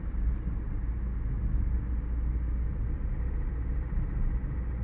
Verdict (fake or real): real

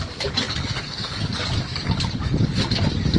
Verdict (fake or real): fake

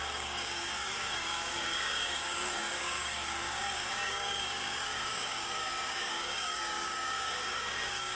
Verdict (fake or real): fake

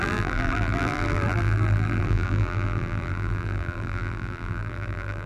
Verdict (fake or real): fake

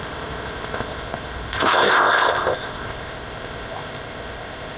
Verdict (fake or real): fake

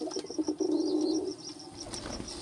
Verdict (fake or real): real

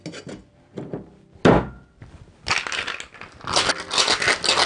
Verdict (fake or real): real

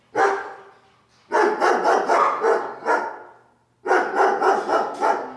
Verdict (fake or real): real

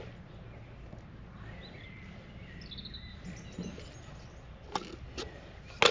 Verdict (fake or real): real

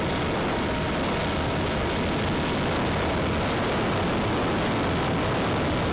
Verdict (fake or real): real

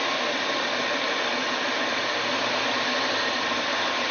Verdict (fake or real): fake